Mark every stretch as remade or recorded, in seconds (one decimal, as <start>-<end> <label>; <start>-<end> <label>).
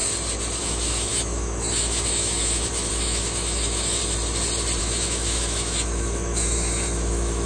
0.0-0.6 recorded; 0.6-4.0 remade; 4.0-4.8 recorded; 4.8-7.5 remade